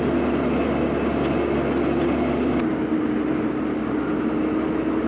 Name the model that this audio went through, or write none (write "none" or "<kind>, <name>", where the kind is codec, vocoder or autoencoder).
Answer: none